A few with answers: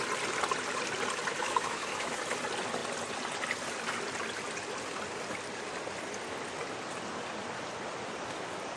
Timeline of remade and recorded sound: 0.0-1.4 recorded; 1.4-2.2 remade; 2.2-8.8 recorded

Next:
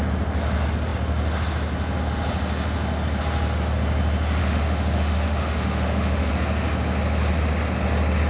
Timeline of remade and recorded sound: 0.0-4.4 recorded; 4.4-6.3 remade; 6.3-8.3 recorded

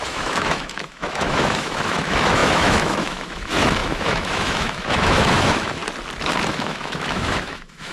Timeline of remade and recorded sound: 0.0-5.8 remade; 5.8-6.5 recorded; 6.5-7.9 remade

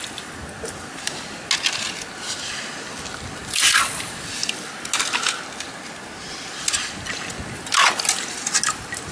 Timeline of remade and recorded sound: 0.0-9.1 recorded